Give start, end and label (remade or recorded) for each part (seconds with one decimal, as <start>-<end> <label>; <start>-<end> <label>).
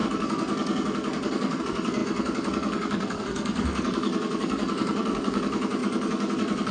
0.0-6.7 remade